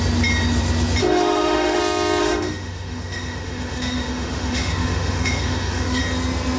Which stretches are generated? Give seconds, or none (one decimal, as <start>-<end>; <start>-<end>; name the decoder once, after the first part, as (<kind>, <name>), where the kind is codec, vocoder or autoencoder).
1.0-1.8 (autoencoder, DAC-VAE); 2.2-6.0